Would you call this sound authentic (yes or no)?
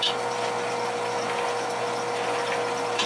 yes